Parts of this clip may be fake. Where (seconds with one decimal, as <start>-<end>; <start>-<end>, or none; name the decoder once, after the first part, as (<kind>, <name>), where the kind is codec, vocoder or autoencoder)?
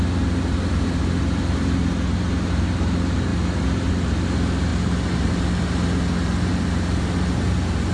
none